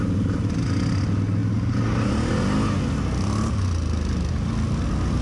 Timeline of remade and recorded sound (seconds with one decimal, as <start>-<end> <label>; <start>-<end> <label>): 0.0-5.2 recorded